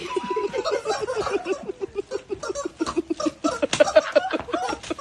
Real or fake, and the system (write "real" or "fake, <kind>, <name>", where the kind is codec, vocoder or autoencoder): real